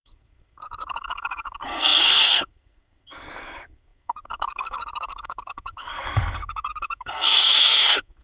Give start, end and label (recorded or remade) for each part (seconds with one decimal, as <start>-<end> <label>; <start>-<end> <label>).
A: 0.0-8.2 remade